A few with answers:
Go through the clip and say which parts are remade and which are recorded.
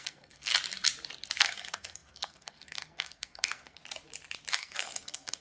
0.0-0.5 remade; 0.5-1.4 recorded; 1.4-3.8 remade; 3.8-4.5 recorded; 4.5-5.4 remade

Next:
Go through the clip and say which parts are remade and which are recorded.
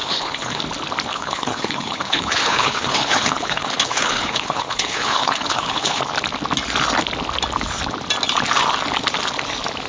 0.0-0.6 remade; 0.6-1.1 recorded; 1.1-6.0 remade; 6.0-9.9 recorded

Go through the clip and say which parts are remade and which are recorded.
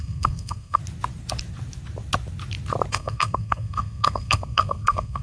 0.0-0.8 remade; 0.8-2.9 recorded; 2.9-5.2 remade